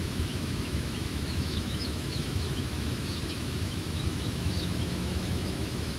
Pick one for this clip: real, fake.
fake